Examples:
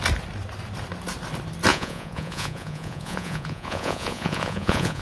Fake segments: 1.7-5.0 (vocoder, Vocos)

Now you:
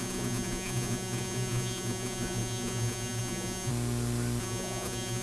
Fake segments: 0.0-3.7 (vocoder, Vocos); 4.4-5.2

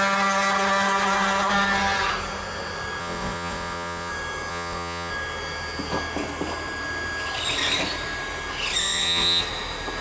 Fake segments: 3.0-4.1 (vocoder, Vocos); 4.5-5.1; 8.8-9.4

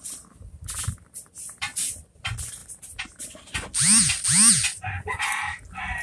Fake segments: none

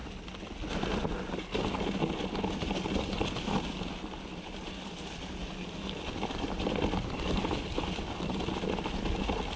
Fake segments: none